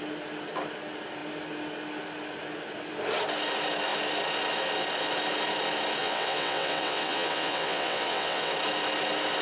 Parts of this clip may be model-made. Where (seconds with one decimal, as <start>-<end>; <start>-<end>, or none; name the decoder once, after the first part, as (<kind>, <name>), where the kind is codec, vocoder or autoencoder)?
6.0-8.5 (vocoder, WaveNeXt)